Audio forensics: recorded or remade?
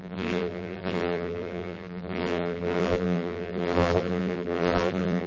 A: remade